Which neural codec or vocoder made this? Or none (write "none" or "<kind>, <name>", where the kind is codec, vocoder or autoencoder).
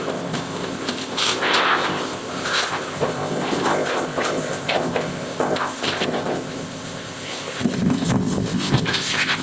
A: codec, ZipCodec